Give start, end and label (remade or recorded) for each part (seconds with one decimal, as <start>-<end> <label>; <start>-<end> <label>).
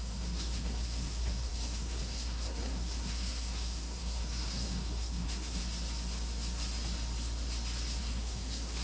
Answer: 0.0-5.6 remade; 5.6-8.0 recorded; 8.0-8.8 remade